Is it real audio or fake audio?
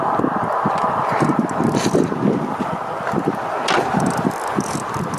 real